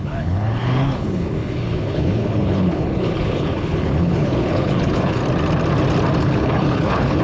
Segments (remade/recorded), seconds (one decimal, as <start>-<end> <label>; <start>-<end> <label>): 0.0-5.2 remade; 5.2-6.2 recorded; 6.2-7.2 remade